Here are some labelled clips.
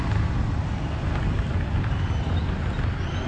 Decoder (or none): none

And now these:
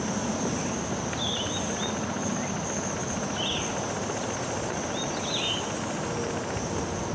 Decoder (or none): none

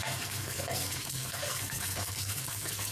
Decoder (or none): codec, SNAC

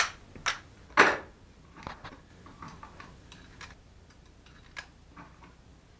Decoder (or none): none